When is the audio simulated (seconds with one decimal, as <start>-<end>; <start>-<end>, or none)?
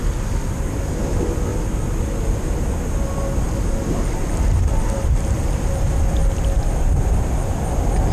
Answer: none